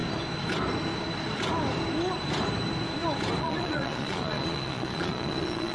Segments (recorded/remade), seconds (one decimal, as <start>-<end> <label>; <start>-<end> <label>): 0.0-3.4 recorded; 3.4-5.7 remade